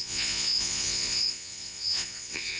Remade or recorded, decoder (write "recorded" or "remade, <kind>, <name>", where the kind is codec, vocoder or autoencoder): remade, vocoder, Vocos